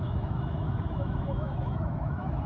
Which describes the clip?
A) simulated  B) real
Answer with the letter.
A